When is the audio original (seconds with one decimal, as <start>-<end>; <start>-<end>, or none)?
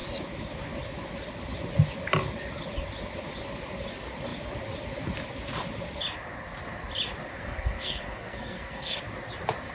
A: 0.0-7.3; 9.0-9.7